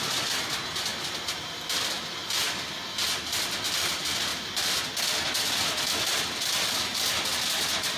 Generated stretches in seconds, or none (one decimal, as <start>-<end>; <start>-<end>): none